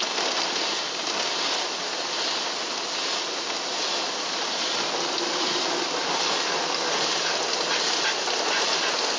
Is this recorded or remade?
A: recorded